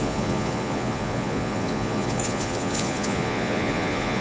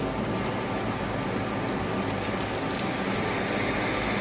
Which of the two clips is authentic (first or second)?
second